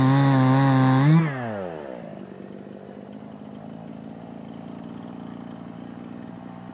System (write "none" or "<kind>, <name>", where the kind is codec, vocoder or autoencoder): none